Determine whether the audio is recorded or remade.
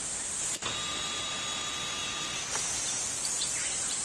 recorded